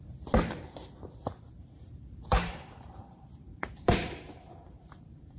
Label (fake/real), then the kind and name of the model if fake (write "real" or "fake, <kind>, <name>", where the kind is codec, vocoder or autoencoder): fake, vocoder, BigVGAN v2